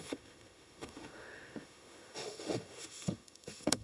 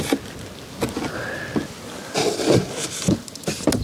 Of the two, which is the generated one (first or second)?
first